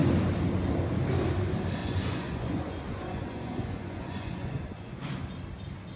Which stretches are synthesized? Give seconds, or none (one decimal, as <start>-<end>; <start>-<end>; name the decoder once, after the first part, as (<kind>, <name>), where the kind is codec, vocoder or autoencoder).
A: 1.8-5.0 (vocoder, Vocos)